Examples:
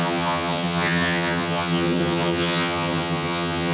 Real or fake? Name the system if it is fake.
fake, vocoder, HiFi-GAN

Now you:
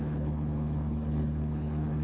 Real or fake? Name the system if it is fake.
fake, codec, HILCodec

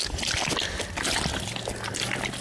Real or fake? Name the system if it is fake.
real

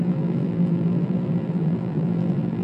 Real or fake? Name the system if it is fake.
fake, vocoder, BigVGAN v2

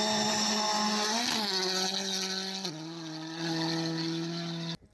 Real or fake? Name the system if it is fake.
real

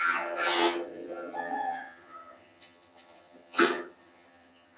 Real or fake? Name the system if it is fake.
fake, vocoder, HiFi-GAN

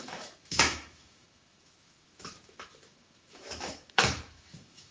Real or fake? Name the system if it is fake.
fake, autoencoder, DAC-VAE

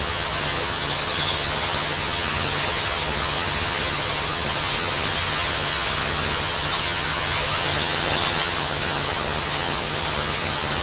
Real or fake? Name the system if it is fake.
fake, vocoder, HiFi-GAN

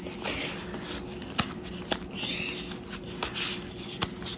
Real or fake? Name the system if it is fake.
real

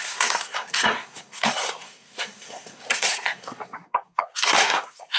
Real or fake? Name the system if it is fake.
fake, codec, SNAC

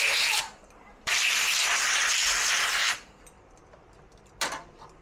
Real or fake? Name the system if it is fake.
fake, vocoder, BigVGAN v2